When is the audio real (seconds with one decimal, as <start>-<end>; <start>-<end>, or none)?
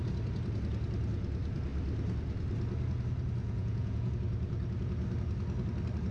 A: 0.0-3.4; 4.1-6.1